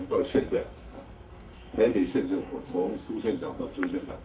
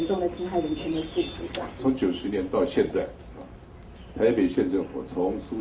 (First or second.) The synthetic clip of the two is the first